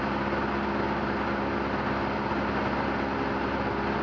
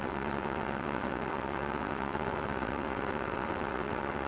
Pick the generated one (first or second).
second